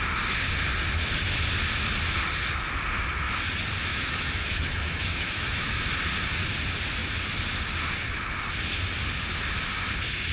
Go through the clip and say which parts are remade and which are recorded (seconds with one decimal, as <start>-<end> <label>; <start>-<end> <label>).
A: 0.0-3.9 recorded; 3.9-5.8 remade; 5.8-10.3 recorded